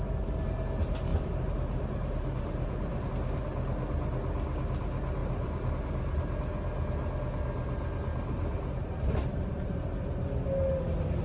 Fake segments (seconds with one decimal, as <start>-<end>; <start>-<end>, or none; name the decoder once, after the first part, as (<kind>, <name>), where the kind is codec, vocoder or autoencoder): 1.1-3.1 (vocoder, BigVGAN v2); 5.2-5.7; 8.8-10.0